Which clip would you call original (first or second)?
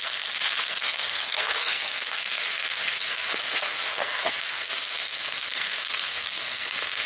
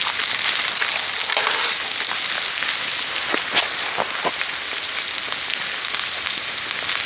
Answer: second